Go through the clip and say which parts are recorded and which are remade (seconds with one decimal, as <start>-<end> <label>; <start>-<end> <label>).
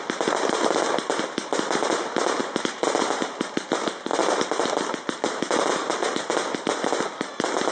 0.0-2.4 recorded; 2.4-3.4 remade; 3.4-7.7 recorded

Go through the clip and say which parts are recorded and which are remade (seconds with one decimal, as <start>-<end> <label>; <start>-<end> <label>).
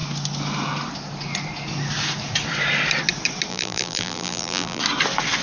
0.0-3.5 recorded; 3.5-4.8 remade; 4.8-5.4 recorded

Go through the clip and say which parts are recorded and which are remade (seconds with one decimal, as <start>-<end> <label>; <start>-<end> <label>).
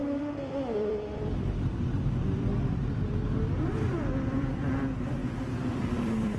0.0-5.2 remade; 5.2-5.7 recorded; 5.7-6.4 remade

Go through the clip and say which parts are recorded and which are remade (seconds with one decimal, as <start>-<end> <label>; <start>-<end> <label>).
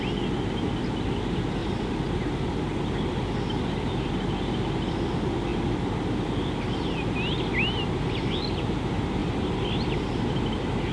0.0-1.6 recorded; 1.6-4.1 remade; 4.1-9.2 recorded; 9.2-10.0 remade; 10.0-10.9 recorded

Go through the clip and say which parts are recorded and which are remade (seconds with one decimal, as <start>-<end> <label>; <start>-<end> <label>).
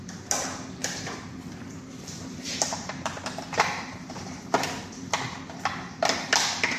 0.0-0.8 recorded; 0.8-4.9 remade; 4.9-6.8 recorded